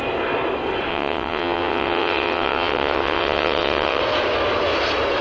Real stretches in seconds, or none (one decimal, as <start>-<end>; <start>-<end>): 0.0-0.9; 4.0-5.2